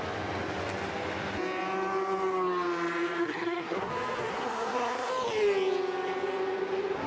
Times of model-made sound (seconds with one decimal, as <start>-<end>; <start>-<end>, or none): 3.2-3.9; 4.3-5.1